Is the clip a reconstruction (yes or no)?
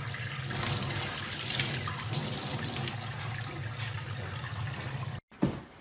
no